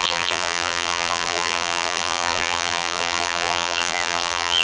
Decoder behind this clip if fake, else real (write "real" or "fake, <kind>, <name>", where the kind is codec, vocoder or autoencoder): fake, vocoder, BigVGAN v2